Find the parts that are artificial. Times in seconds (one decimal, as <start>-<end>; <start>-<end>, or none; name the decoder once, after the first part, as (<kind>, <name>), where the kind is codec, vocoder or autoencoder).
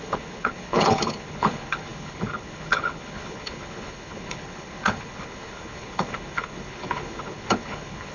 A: 0.0-8.1 (codec, HILCodec)